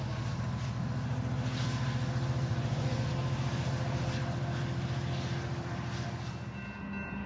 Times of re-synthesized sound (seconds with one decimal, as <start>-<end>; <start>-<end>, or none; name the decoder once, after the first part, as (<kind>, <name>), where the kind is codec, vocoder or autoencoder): 2.5-3.1 (vocoder, Vocos)